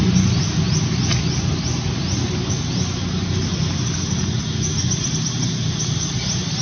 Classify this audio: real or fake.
real